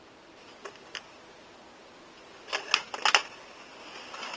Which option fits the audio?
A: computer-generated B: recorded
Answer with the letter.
B